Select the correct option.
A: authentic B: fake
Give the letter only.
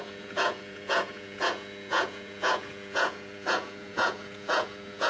B